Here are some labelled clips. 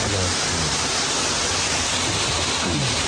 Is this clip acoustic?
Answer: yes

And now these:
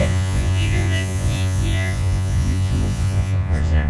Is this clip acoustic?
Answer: no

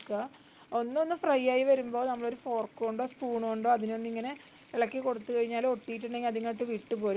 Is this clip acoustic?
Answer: yes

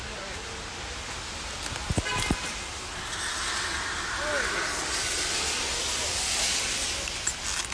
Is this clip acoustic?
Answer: yes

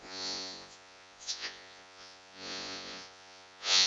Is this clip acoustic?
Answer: no